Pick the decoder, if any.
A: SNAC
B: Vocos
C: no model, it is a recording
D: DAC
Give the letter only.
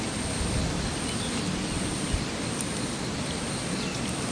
C